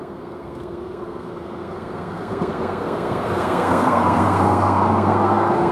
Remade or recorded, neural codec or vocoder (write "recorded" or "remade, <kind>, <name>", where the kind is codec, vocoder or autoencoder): remade, codec, SNAC